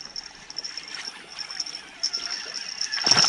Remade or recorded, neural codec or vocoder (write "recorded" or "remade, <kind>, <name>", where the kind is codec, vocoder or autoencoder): recorded